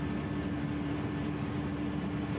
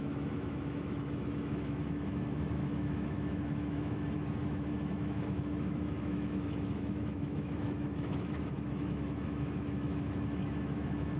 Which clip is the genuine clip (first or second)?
first